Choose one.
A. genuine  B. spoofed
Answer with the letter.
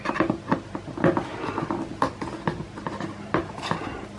A